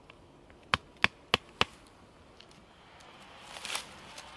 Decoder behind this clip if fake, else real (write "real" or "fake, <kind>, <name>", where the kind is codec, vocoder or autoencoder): real